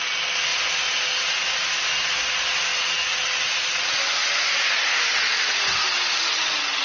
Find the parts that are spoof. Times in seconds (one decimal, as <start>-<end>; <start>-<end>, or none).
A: none